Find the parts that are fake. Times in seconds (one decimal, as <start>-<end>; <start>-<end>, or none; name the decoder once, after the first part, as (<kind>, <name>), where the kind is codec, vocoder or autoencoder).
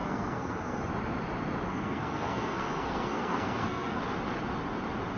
0.0-0.8 (codec, SNAC); 1.7-4.0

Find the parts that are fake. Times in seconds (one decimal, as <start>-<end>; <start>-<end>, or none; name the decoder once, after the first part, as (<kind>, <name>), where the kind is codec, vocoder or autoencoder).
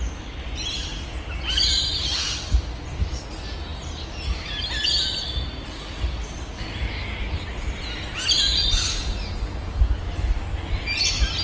none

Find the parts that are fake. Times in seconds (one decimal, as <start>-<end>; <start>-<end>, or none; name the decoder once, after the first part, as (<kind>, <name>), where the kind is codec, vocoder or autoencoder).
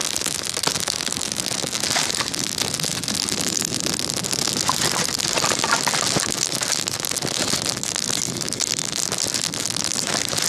none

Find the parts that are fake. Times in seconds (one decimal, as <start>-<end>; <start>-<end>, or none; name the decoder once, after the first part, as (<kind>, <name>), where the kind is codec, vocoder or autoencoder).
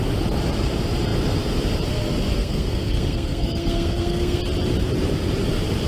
2.4-4.4 (codec, SNAC)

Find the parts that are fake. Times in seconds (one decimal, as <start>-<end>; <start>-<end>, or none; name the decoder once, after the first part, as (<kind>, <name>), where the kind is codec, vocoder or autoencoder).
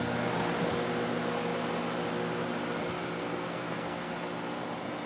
3.2-4.1 (codec, SNAC)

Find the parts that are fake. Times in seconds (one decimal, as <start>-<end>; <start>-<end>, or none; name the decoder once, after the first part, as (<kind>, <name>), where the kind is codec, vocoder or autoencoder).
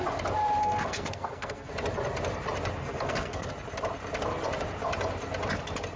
0.6-1.7 (codec, SNAC); 2.8-3.5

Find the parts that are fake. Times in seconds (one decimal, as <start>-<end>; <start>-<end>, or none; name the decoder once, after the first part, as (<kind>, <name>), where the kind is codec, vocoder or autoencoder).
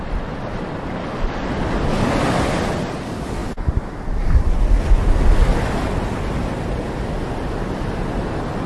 none